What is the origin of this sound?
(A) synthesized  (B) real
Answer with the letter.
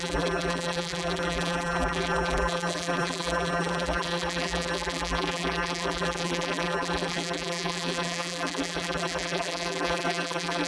A